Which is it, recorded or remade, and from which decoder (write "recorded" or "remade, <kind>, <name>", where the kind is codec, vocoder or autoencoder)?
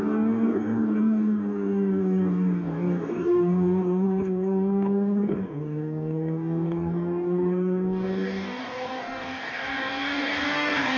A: remade, codec, DAC